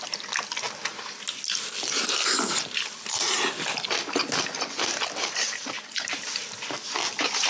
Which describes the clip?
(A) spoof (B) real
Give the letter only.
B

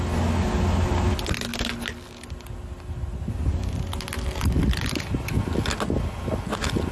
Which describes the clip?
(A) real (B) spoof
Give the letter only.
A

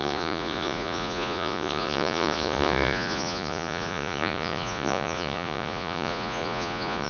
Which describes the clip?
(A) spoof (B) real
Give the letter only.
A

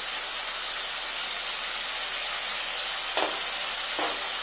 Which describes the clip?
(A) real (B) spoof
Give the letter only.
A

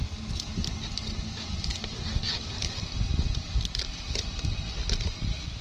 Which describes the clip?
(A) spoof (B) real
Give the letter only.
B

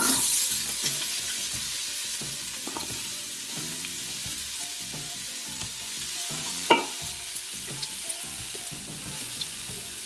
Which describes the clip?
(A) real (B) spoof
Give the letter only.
B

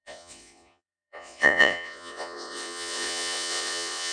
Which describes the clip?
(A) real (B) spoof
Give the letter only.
B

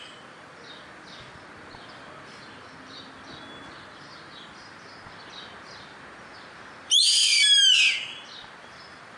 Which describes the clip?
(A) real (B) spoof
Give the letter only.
A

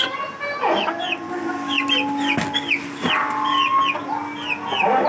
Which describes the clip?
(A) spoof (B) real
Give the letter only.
B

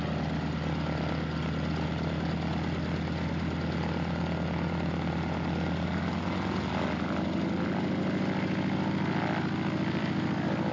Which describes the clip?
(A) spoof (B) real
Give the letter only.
B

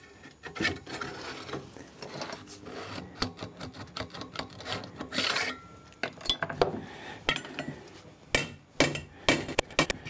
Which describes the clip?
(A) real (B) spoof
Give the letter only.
A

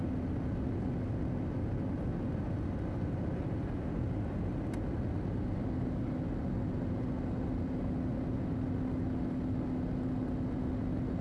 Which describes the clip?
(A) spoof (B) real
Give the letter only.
B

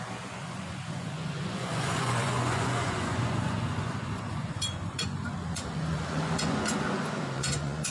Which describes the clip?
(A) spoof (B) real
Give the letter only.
A